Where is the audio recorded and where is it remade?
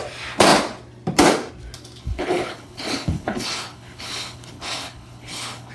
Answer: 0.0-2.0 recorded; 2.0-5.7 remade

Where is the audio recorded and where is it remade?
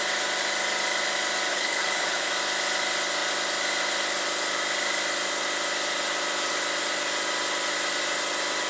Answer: 0.0-1.5 recorded; 1.5-2.3 remade; 2.3-8.7 recorded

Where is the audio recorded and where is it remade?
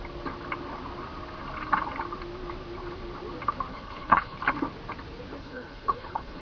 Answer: 0.0-3.7 recorded; 3.7-4.4 remade; 4.4-5.4 recorded; 5.4-6.4 remade